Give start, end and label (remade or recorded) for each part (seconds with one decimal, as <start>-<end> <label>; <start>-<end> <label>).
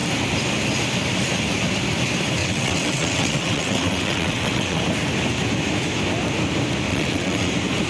0.0-2.4 recorded; 2.4-4.8 remade; 4.8-6.9 recorded; 6.9-7.5 remade; 7.5-7.9 recorded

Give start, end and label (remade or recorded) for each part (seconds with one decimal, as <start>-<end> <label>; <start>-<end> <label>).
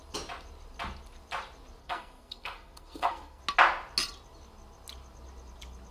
0.0-1.8 recorded; 1.8-3.4 remade; 3.4-5.9 recorded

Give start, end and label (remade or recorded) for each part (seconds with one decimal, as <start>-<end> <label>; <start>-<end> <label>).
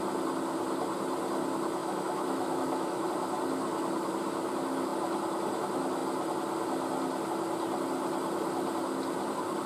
0.0-1.8 recorded; 1.8-3.1 remade; 3.1-9.7 recorded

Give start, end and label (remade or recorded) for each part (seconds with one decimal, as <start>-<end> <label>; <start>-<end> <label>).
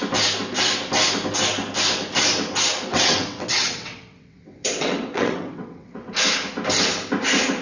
0.0-2.9 recorded; 2.9-6.1 remade; 6.1-7.6 recorded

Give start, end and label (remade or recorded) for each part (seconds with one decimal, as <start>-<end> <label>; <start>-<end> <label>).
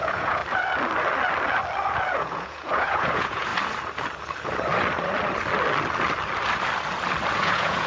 0.0-0.4 remade; 0.4-2.2 recorded; 2.2-3.5 remade; 3.5-7.3 recorded; 7.3-7.9 remade